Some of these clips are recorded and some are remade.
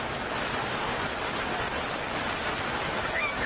recorded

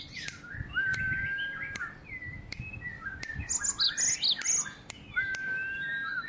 recorded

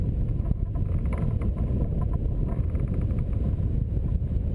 recorded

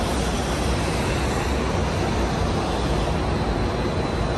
recorded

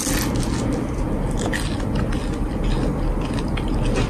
recorded